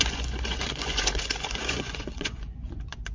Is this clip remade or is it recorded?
remade